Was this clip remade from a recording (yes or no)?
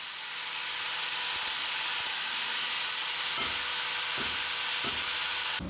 no